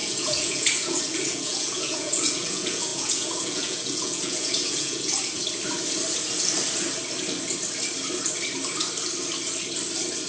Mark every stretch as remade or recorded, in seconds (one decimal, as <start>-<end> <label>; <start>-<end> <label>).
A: 0.0-5.1 remade; 5.1-10.3 recorded